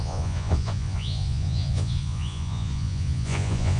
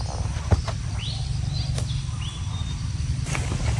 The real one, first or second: second